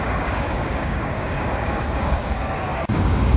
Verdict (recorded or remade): remade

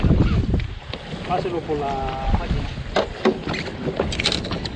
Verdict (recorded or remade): recorded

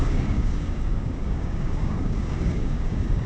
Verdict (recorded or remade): remade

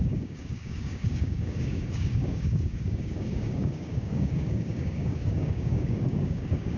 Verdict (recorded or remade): remade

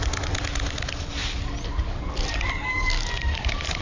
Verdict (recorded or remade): recorded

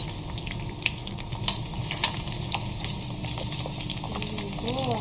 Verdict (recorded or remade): recorded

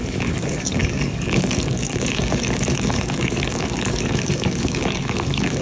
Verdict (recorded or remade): remade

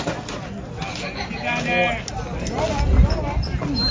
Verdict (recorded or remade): recorded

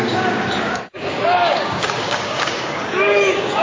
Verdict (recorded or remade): remade